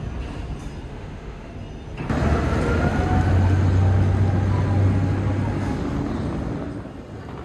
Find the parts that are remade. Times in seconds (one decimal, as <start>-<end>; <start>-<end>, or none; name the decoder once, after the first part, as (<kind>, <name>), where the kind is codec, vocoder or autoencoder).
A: 0.9-1.5 (autoencoder, DAC-VAE)